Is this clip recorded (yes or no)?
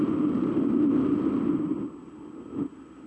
yes